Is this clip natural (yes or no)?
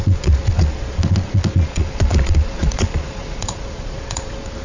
no